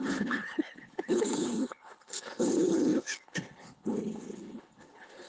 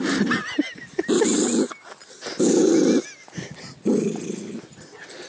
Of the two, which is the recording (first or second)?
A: second